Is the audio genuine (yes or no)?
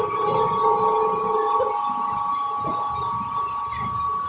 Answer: yes